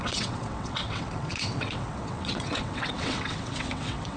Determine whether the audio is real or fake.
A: fake